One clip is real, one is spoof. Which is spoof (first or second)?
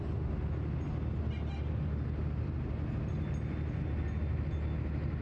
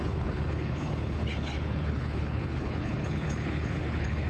second